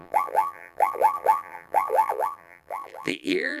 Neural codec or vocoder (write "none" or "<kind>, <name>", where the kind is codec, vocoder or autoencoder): vocoder, BigVGAN v2